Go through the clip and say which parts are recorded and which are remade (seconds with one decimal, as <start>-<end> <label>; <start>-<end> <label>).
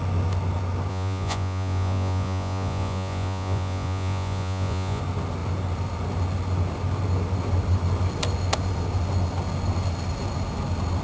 0.0-0.9 recorded; 0.9-5.0 remade; 5.0-11.0 recorded